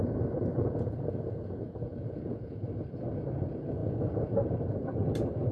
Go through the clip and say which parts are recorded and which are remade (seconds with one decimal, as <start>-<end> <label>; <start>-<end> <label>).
0.0-0.5 recorded; 0.5-2.6 remade; 2.6-3.8 recorded; 3.8-4.5 remade; 4.5-5.5 recorded